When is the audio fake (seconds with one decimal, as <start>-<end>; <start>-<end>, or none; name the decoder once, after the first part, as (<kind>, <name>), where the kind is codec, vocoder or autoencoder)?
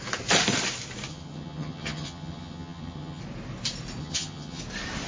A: 1.1-3.2 (vocoder, HiFi-GAN); 4.0-4.6